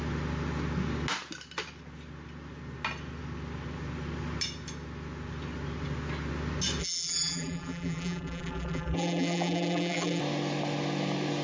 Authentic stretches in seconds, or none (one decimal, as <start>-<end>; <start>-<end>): 0.0-6.8; 10.2-11.4